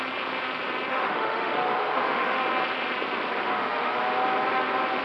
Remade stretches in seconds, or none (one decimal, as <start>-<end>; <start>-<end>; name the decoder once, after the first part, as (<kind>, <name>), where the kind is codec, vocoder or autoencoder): 0.9-2.4 (autoencoder, DAC-VAE); 3.4-4.0

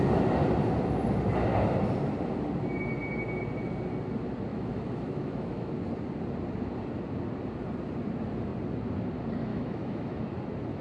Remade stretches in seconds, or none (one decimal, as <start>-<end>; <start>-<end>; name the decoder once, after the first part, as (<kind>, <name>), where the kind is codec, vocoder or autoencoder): 4.5-5.7 (autoencoder, DAC-VAE); 9.5-10.2